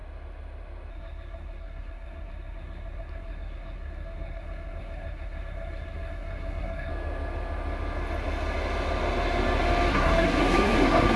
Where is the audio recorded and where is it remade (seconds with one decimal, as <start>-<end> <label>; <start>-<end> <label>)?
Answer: 0.0-0.9 recorded; 0.9-6.9 remade; 6.9-9.9 recorded; 9.9-11.2 remade